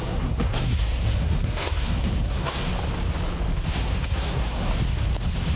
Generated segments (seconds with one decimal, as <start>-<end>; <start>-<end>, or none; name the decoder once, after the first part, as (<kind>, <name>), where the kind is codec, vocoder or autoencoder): 0.0-2.7 (codec, SNAC); 3.7-4.7

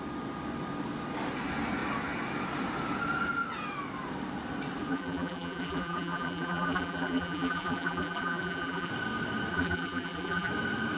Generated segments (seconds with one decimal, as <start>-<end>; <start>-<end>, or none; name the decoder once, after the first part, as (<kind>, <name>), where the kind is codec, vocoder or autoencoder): 4.9-8.9 (vocoder, BigVGAN v2); 9.5-10.5

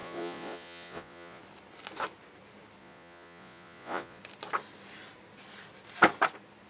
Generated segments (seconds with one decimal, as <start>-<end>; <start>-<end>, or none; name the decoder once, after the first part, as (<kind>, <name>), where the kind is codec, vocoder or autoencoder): 0.0-1.4 (vocoder, Vocos); 2.8-4.2

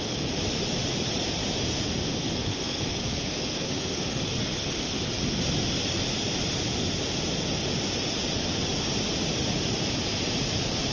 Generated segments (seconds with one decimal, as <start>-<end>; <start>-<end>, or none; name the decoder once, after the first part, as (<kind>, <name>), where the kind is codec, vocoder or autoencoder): 2.5-4.0 (codec, SNAC)

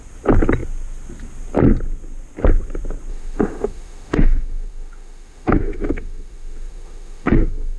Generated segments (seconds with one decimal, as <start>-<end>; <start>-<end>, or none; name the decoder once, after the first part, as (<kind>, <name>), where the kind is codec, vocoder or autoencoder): 3.1-7.8 (autoencoder, DAC-VAE)

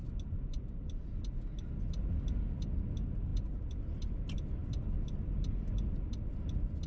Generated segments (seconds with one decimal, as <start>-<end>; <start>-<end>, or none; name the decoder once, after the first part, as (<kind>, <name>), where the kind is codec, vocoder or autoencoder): none

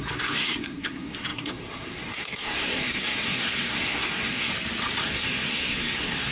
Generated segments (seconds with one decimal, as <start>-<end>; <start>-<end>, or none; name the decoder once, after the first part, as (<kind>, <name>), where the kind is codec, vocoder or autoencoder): 0.0-4.5 (codec, SNAC); 5.0-6.3